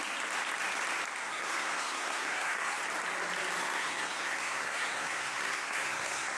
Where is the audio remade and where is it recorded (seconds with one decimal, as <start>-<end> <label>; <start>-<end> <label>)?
0.0-1.2 recorded; 1.2-2.8 remade; 2.8-3.6 recorded; 3.6-6.4 remade